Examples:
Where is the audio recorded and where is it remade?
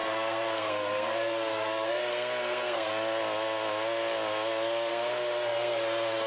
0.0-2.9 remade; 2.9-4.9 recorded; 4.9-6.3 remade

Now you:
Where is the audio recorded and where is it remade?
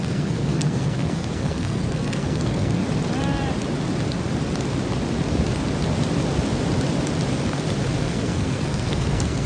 0.0-2.8 remade; 2.8-8.0 recorded; 8.0-9.5 remade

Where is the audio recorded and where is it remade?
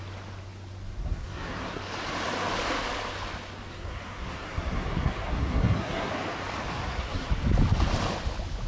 0.0-1.0 recorded; 1.0-1.8 remade; 1.8-3.7 recorded; 3.7-6.1 remade; 6.1-6.7 recorded; 6.7-7.3 remade; 7.3-8.7 recorded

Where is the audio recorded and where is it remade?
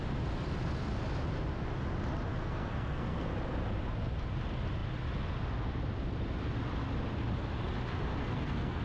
0.0-2.3 recorded; 2.3-3.3 remade; 3.3-8.2 recorded; 8.2-8.8 remade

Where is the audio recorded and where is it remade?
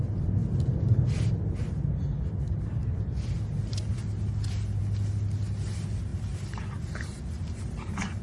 0.0-8.2 recorded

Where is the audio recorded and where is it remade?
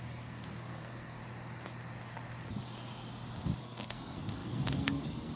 0.0-1.2 remade; 1.2-3.6 recorded; 3.6-5.4 remade